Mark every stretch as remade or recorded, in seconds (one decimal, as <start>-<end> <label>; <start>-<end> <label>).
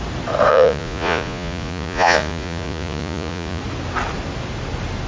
0.0-0.5 recorded; 0.5-3.6 remade; 3.6-5.1 recorded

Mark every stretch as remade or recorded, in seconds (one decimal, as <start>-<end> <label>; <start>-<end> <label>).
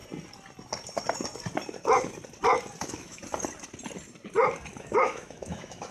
0.0-2.8 recorded; 2.8-3.2 remade; 3.2-4.7 recorded; 4.7-5.9 remade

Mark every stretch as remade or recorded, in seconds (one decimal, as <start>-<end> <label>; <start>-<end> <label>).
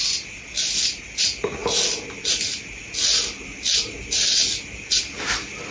0.0-5.7 recorded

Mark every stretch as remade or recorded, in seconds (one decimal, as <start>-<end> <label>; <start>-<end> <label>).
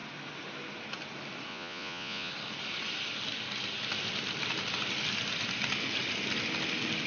0.0-1.5 recorded; 1.5-2.3 remade; 2.3-7.1 recorded